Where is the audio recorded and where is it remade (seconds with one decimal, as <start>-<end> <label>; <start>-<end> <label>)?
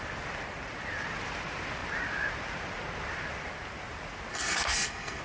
0.0-4.3 recorded; 4.3-5.2 remade